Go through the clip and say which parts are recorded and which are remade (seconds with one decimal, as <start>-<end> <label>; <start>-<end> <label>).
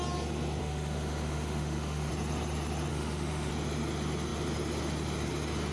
0.0-0.6 recorded; 0.6-2.1 remade; 2.1-2.9 recorded; 2.9-3.5 remade; 3.5-5.7 recorded